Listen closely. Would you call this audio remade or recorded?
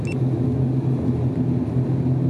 recorded